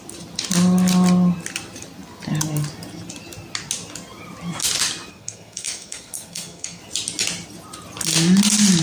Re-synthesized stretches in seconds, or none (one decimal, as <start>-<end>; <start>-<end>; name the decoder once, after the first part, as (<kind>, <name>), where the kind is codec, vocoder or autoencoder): 5.1-6.8 (codec, SNAC)